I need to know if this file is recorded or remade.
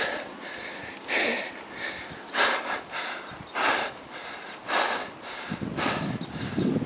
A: recorded